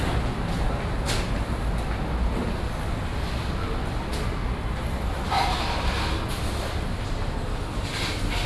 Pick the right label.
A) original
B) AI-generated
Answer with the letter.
A